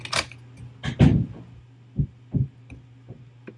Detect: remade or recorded recorded